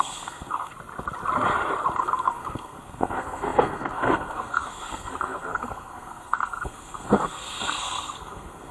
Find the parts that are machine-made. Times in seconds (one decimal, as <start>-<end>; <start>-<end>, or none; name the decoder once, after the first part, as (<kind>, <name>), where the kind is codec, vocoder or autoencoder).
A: 0.0-0.7 (codec, SNAC); 2.0-8.7